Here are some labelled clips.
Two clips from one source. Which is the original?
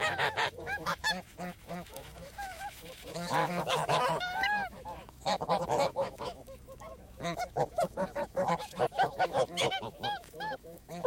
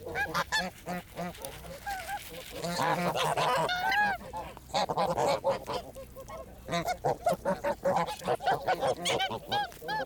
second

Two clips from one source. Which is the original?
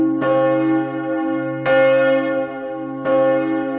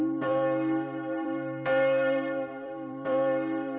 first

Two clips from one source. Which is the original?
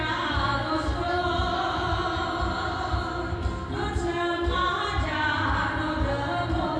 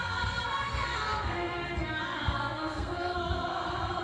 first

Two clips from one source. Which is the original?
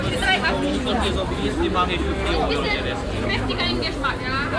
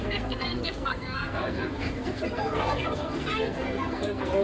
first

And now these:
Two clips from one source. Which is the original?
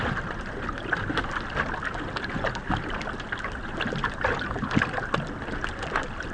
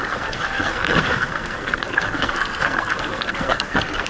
first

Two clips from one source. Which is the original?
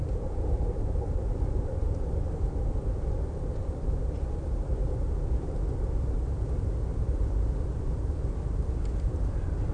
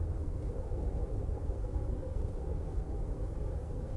first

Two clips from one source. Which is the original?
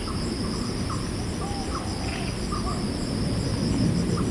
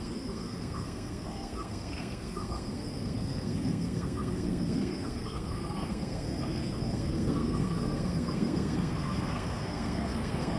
first